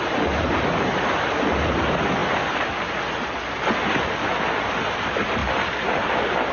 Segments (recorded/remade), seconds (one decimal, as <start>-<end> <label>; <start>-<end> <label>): 0.0-5.4 recorded; 5.4-6.1 remade; 6.1-6.5 recorded